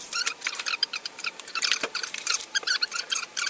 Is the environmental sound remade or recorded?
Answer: remade